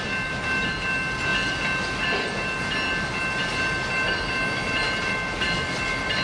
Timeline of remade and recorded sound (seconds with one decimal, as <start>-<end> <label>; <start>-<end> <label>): 0.0-6.2 recorded